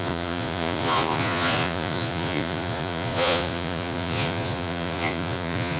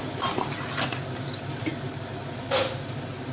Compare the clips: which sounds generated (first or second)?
first